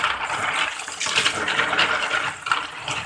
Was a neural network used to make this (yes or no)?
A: no